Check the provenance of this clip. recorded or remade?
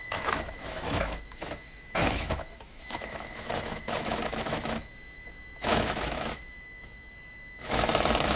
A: remade